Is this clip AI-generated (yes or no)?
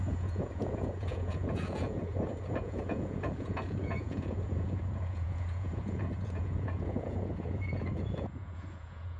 yes